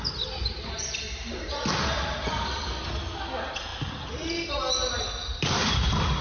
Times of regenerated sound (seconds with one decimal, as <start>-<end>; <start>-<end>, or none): none